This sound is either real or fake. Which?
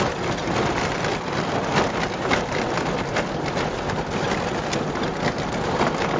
fake